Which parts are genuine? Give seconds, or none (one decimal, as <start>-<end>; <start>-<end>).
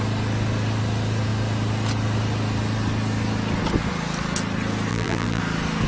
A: 0.0-4.9; 5.4-5.9